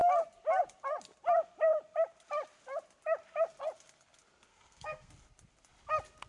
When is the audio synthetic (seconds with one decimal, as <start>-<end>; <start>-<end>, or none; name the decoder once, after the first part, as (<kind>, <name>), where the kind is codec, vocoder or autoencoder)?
4.5-5.1 (codec, SNAC)